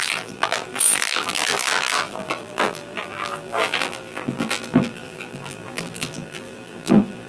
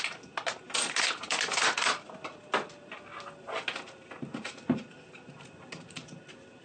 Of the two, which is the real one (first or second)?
second